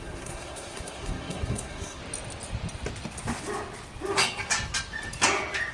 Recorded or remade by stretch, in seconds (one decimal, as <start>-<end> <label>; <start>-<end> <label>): 0.0-2.0 remade; 2.0-5.7 recorded